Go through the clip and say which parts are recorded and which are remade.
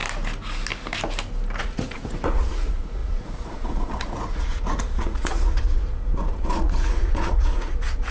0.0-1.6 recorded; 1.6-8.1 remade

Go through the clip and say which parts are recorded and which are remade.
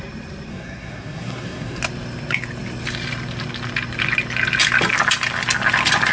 0.0-0.5 recorded; 0.5-1.8 remade; 1.8-6.1 recorded